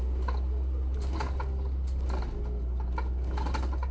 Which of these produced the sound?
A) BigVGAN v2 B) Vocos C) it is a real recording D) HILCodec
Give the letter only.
C